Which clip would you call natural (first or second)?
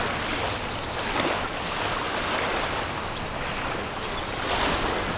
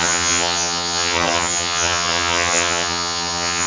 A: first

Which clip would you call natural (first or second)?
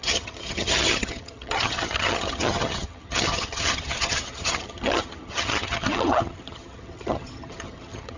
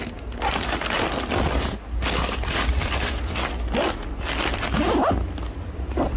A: second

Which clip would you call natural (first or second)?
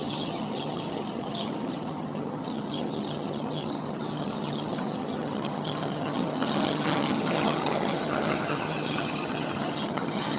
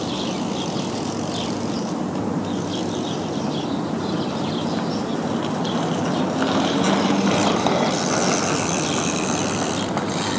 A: second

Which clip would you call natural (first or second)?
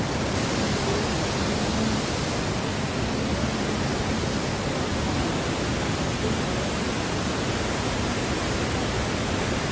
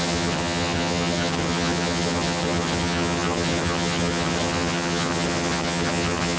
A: first